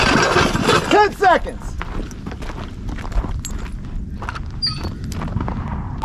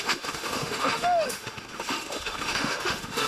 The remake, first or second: second